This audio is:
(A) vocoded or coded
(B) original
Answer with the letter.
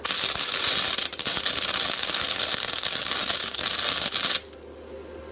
B